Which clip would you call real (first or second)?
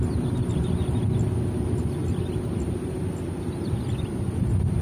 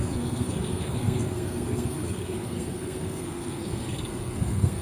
first